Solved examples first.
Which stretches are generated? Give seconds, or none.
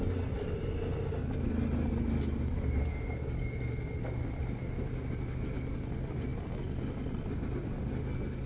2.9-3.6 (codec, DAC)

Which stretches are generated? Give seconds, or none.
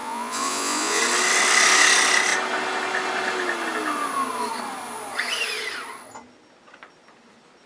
0.0-1.0 (vocoder, Vocos)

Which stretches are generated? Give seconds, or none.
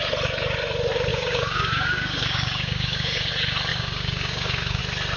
1.1-3.3 (codec, DAC); 3.7-4.8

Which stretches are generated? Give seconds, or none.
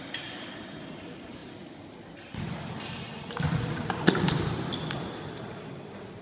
none